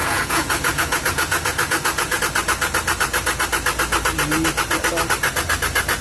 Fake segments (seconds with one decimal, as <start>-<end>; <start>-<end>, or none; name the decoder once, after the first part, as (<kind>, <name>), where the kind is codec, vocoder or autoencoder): 0.0-2.2 (vocoder, Vocos)

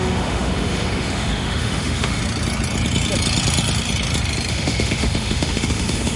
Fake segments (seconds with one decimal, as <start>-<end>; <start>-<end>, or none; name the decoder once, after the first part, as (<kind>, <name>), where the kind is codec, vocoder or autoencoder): 0.0-2.2 (autoencoder, DAC-VAE); 4.5-6.2

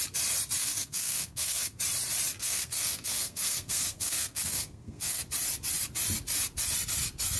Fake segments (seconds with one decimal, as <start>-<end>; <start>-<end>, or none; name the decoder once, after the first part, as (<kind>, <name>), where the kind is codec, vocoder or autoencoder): 0.6-1.8 (codec, SNAC); 2.4-5.2

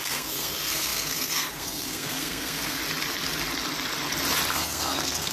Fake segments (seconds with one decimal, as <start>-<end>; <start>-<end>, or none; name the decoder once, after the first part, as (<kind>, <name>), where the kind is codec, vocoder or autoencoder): 0.0-2.8 (codec, SNAC); 4.5-5.3

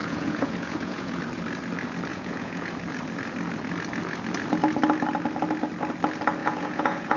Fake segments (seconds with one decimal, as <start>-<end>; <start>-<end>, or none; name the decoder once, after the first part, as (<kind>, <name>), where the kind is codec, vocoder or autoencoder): 0.0-1.2 (vocoder, Vocos); 2.1-2.7; 6.4-7.2